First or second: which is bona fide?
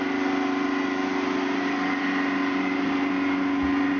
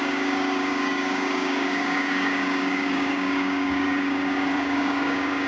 first